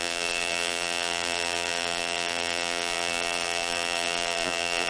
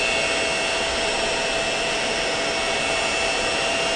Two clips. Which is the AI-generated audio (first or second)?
first